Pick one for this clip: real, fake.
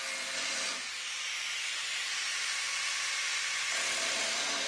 real